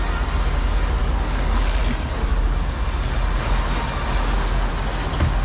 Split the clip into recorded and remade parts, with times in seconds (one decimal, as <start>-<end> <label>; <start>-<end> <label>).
0.0-1.0 recorded; 1.0-1.8 remade; 1.8-5.4 recorded